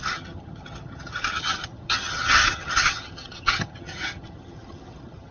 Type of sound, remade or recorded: remade